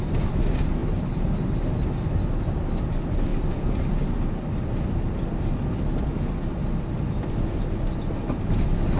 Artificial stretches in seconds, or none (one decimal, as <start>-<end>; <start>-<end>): 3.3-3.9